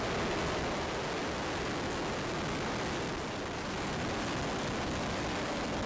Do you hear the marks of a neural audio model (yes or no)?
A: no